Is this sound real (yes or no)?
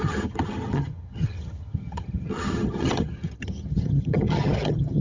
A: no